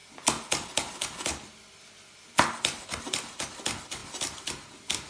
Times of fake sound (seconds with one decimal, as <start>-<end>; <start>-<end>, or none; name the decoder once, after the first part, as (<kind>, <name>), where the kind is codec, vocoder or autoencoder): 4.0-4.5 (vocoder, BigVGAN v2)